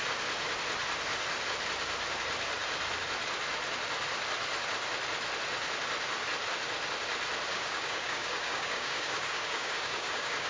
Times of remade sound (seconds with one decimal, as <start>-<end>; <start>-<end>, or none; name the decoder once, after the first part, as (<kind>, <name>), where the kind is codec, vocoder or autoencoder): 7.5-10.5 (codec, DAC)